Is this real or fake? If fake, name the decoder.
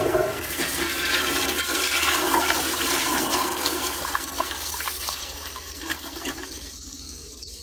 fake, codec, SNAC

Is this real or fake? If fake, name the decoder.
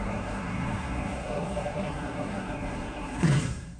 fake, codec, SNAC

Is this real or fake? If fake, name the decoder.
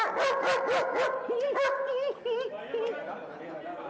real